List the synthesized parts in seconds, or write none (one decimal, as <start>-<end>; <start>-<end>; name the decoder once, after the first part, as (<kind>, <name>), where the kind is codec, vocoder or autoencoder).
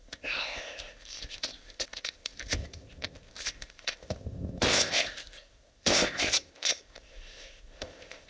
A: 0.0-8.3 (codec, ZipCodec)